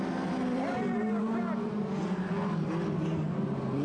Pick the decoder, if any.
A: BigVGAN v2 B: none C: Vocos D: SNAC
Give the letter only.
B